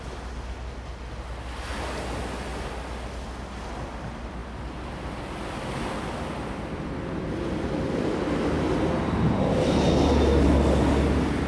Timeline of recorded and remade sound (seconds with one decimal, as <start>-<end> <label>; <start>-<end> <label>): 0.0-11.5 recorded